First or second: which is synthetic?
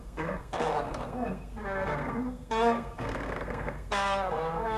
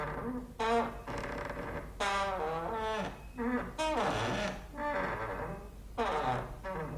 first